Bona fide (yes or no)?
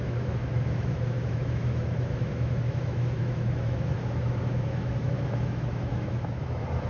no